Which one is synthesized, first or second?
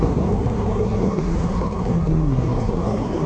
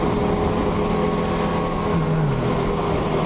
first